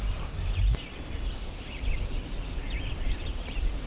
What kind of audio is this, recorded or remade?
recorded